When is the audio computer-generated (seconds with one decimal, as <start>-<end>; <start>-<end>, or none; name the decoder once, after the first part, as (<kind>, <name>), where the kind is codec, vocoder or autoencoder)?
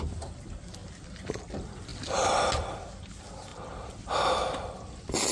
none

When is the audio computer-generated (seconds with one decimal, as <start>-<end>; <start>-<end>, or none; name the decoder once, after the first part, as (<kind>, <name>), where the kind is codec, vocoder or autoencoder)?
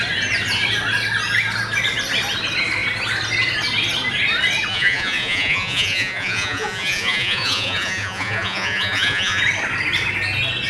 4.7-9.4 (vocoder, Vocos)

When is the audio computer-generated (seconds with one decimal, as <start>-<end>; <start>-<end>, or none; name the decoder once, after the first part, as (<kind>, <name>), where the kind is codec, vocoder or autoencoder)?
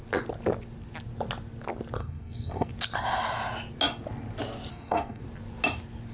2.0-2.7 (codec, SNAC); 4.7-5.2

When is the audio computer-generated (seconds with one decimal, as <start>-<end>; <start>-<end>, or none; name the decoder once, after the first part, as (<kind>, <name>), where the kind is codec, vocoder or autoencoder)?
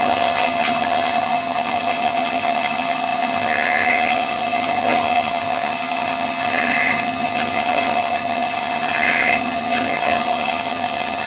0.0-11.3 (vocoder, HiFi-GAN)